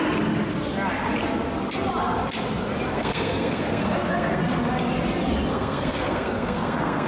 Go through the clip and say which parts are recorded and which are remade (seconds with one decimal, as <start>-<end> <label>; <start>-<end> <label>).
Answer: 0.0-2.9 recorded; 2.9-4.4 remade; 4.4-5.5 recorded; 5.5-7.1 remade